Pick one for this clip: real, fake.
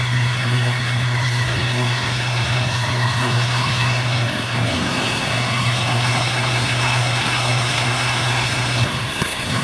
fake